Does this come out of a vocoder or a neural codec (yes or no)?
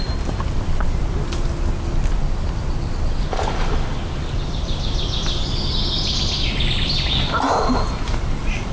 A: no